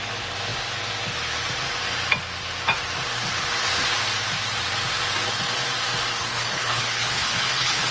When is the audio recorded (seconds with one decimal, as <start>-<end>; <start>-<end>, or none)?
0.0-6.3